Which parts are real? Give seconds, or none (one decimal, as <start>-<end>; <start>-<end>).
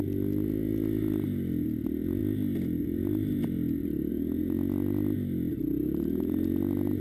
0.0-7.0